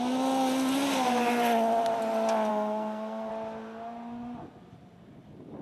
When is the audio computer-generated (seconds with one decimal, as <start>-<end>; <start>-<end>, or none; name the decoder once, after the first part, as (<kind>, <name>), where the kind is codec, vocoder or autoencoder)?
2.5-3.3 (codec, SNAC)

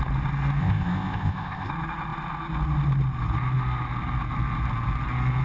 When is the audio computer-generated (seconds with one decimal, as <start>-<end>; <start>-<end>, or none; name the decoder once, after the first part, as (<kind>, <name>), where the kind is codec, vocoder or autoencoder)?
0.6-1.7 (codec, ZipCodec)

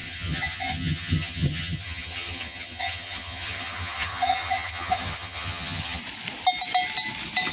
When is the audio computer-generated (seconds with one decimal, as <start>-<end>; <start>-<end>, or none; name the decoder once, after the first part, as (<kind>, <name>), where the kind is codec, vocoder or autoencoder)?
0.0-6.0 (vocoder, HiFi-GAN)

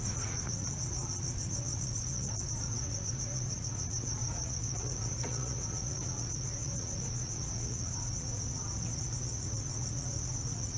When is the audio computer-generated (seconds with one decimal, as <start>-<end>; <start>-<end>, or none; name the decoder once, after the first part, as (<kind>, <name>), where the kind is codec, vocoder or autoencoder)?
0.0-10.8 (vocoder, Vocos)

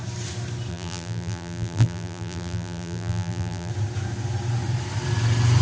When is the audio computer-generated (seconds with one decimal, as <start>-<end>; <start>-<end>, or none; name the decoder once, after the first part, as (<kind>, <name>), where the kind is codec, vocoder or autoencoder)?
0.7-3.7 (vocoder, BigVGAN v2)

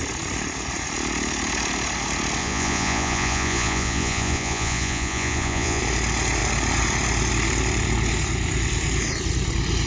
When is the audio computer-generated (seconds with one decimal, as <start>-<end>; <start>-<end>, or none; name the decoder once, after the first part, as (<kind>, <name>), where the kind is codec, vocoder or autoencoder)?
2.4-5.8 (vocoder, Vocos)